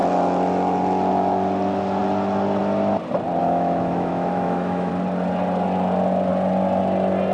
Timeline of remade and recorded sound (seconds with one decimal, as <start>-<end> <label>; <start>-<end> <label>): 0.0-3.4 recorded; 3.4-4.9 remade; 4.9-7.3 recorded